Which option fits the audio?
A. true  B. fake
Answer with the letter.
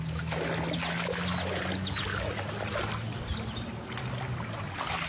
A